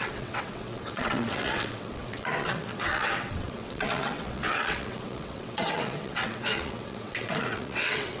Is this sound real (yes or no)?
no